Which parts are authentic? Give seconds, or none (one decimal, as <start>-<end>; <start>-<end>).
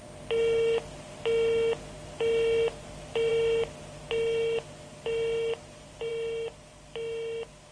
0.0-7.7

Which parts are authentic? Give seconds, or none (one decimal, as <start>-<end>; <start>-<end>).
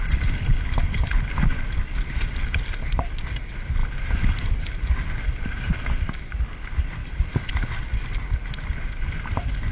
0.0-3.8; 5.7-9.7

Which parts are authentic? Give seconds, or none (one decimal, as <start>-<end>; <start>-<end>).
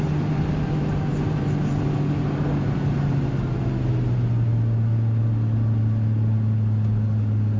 0.0-1.1; 1.8-7.6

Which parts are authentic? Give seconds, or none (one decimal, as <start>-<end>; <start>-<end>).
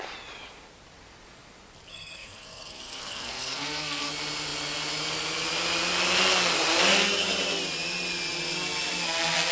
0.0-1.9; 4.1-9.5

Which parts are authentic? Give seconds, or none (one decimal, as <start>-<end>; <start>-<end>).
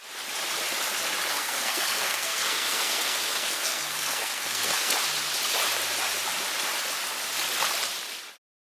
0.0-1.3; 4.9-8.6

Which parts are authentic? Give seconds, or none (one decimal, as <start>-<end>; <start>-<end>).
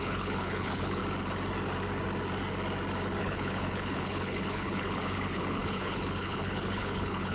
1.0-3.2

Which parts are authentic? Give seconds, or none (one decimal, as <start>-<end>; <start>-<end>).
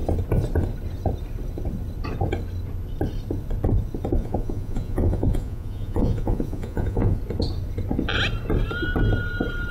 0.0-4.2; 7.2-9.7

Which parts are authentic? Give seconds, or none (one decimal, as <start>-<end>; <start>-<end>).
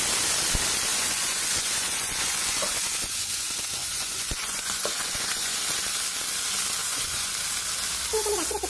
0.0-0.9; 5.6-6.8; 7.3-8.7